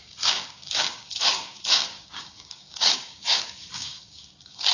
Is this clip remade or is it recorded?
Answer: remade